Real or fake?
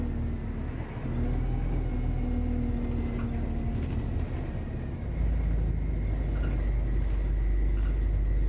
real